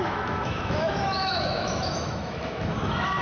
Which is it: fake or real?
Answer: fake